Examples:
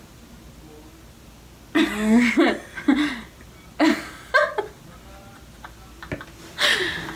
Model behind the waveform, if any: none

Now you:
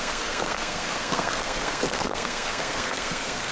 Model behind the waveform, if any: codec, SNAC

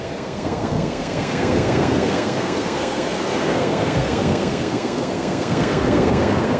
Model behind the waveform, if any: codec, SNAC